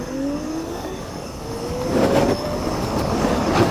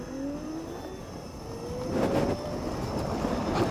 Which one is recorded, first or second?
second